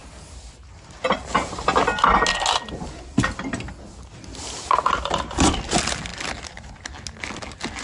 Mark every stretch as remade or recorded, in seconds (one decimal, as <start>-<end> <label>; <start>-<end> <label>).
0.0-7.8 recorded